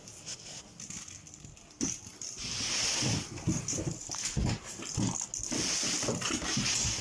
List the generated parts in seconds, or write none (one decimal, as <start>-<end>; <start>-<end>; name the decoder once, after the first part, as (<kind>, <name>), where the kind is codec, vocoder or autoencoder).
none